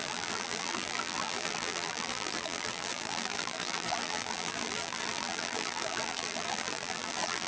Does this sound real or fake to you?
fake